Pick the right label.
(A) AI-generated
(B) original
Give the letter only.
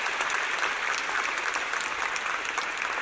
B